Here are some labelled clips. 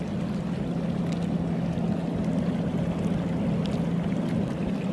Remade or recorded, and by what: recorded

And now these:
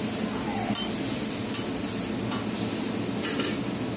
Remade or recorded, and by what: recorded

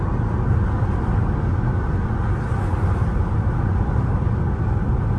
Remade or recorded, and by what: recorded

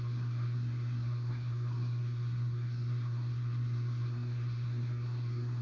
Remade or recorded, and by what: remade, codec, SNAC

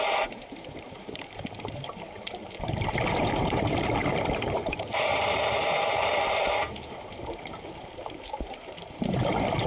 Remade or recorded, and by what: remade, vocoder, BigVGAN v2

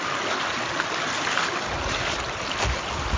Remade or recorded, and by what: recorded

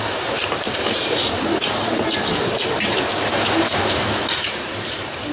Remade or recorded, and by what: remade, vocoder, BigVGAN v2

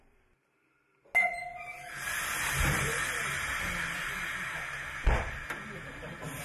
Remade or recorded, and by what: recorded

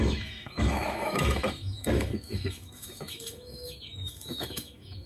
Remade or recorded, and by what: remade, autoencoder, DAC-VAE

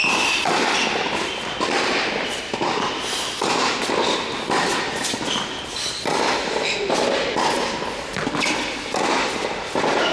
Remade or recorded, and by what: recorded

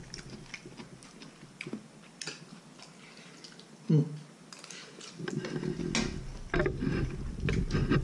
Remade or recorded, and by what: recorded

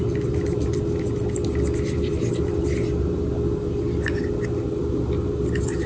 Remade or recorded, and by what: recorded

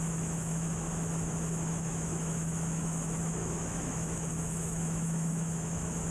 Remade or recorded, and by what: remade, autoencoder, DAC-VAE